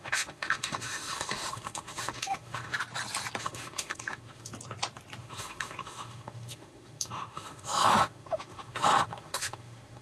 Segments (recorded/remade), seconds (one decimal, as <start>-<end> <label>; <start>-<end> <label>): 0.0-2.7 remade; 2.7-3.4 recorded; 3.4-4.5 remade; 4.5-5.2 recorded; 5.2-10.0 remade